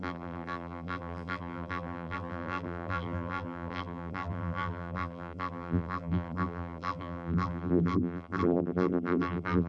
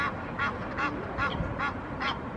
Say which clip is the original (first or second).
second